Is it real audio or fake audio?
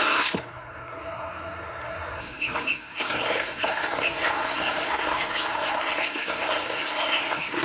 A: fake